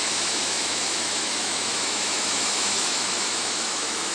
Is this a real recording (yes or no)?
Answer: no